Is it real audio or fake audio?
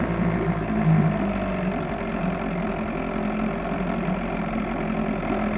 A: real